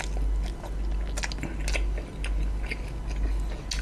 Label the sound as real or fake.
real